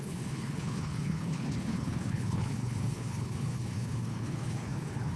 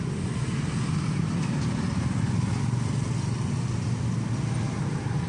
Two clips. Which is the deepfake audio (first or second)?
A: first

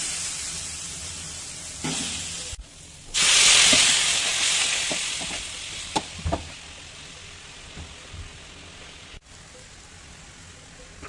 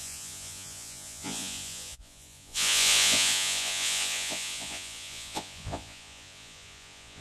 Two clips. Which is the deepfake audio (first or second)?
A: second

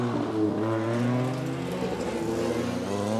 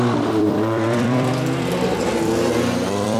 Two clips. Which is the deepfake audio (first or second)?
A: second